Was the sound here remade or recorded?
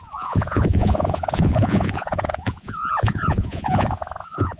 remade